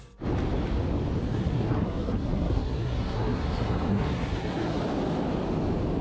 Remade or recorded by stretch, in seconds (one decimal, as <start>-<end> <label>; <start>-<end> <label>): 0.0-1.2 recorded; 1.2-4.8 remade; 4.8-6.0 recorded